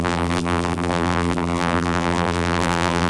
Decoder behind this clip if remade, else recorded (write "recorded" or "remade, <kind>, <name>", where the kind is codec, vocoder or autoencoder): remade, vocoder, BigVGAN v2